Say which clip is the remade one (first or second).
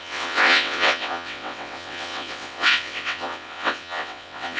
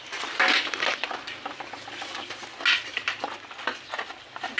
first